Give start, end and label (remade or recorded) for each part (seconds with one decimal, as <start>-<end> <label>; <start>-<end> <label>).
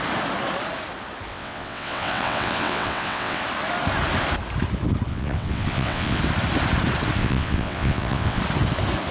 0.0-1.3 recorded; 1.3-3.4 remade; 3.4-5.1 recorded; 5.1-6.2 remade; 6.2-7.2 recorded; 7.2-8.4 remade; 8.4-9.1 recorded